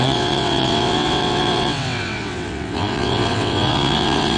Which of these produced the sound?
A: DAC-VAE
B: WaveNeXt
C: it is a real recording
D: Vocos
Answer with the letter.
B